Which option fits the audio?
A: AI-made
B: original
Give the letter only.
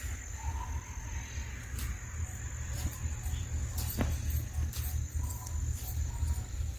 B